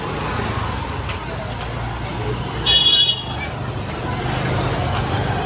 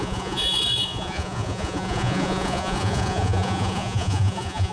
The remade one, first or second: second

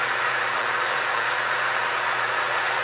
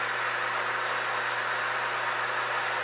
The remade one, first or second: first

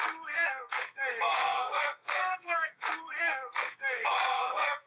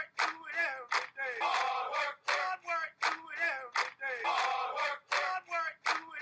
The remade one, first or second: first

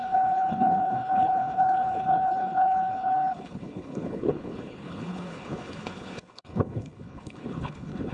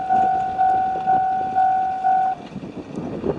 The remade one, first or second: first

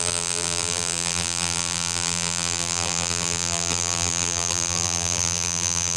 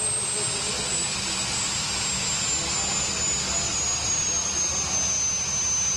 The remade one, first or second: first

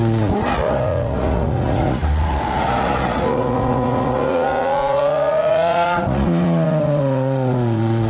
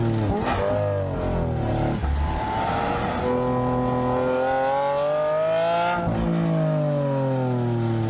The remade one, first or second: first